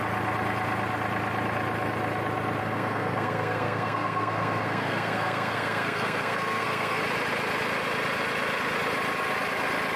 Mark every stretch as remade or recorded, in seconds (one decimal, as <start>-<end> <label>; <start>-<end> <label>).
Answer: 0.0-2.6 recorded; 2.6-7.0 remade; 7.0-10.0 recorded